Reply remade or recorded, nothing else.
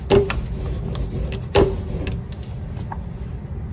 recorded